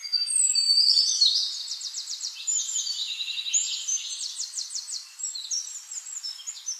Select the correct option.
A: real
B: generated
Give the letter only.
B